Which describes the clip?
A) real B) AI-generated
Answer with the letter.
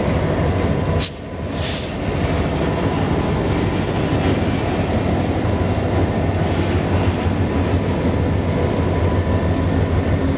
A